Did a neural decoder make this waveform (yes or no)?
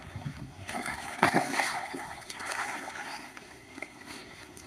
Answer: yes